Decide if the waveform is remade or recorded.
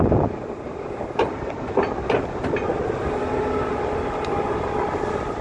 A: recorded